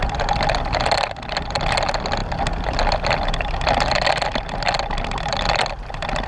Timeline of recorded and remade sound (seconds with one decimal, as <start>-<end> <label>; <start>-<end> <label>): 0.0-6.3 recorded